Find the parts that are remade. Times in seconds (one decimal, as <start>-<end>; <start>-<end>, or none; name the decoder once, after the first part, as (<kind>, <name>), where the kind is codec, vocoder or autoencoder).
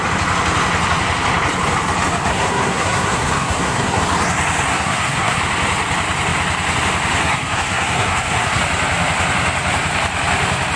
2.3-4.0 (codec, SNAC); 4.7-5.4; 7.2-8.6